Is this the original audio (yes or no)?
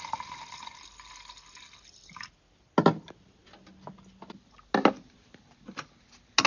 yes